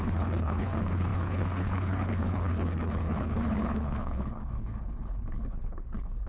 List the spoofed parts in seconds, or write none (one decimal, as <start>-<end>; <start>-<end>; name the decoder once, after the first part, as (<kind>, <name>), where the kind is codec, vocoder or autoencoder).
0.0-6.3 (codec, HILCodec)